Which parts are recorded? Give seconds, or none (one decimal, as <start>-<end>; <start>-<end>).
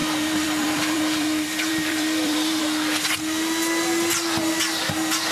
2.6-5.3